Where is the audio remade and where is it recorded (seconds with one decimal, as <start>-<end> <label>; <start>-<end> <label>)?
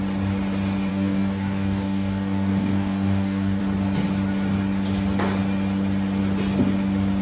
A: 0.0-0.9 recorded; 0.9-3.6 remade; 3.6-7.2 recorded